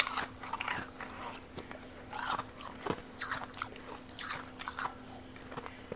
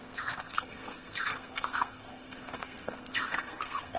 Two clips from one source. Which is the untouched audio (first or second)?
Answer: first